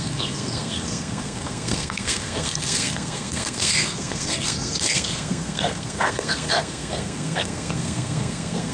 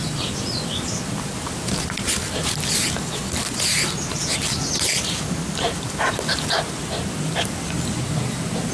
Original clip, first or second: second